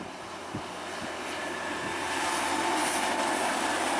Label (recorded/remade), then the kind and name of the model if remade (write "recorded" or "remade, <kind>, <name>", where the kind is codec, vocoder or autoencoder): recorded